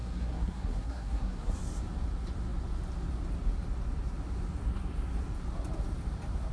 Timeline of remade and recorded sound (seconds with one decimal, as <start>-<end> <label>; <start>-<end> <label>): 0.0-1.6 remade; 1.6-6.5 recorded